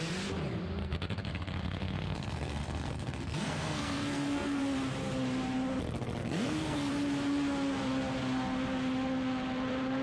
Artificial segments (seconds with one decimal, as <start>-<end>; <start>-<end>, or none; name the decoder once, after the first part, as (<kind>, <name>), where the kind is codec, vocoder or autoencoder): 0.8-4.6 (codec, SNAC); 6.2-6.9

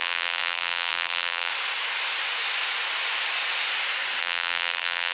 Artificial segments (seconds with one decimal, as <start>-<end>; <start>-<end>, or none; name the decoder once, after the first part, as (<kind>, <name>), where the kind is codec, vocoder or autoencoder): 0.0-1.5 (vocoder, BigVGAN v2); 4.2-5.1

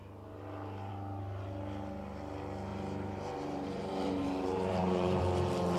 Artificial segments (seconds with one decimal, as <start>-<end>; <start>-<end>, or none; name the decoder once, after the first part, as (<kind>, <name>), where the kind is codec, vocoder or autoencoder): 2.7-5.2 (vocoder, BigVGAN v2)